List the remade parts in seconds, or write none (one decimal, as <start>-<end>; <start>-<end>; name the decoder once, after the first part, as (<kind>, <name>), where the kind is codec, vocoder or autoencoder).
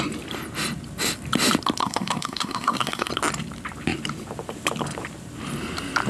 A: 1.8-3.1 (codec, SNAC)